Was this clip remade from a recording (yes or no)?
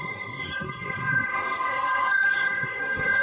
yes